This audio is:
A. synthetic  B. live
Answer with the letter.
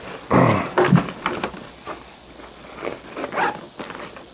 B